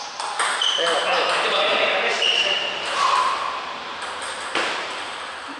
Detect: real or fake fake